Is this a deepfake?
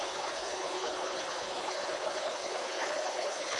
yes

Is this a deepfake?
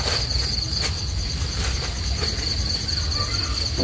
no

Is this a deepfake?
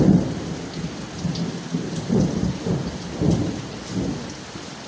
no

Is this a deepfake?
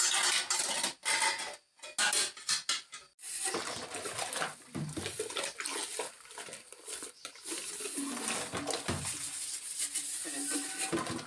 no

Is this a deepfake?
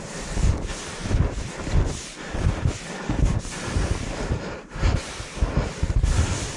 no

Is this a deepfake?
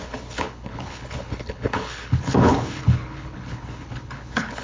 yes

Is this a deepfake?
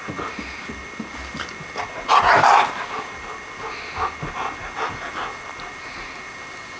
no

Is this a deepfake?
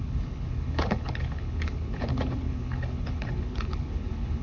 yes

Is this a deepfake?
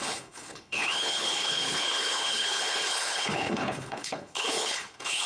yes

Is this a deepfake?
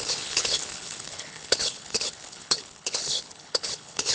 yes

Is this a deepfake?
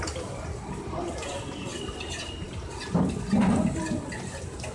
no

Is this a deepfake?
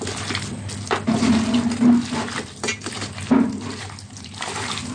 no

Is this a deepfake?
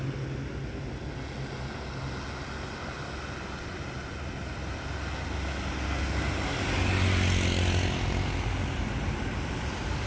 no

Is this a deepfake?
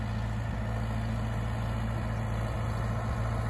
no